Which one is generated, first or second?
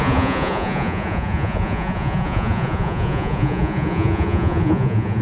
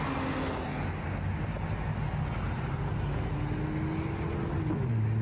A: first